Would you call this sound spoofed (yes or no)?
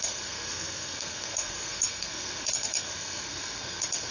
yes